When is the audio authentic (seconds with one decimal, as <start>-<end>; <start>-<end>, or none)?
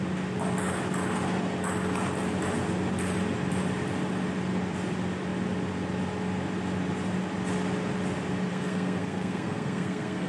0.0-8.5